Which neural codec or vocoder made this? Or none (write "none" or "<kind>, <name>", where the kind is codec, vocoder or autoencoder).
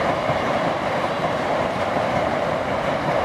vocoder, BigVGAN v2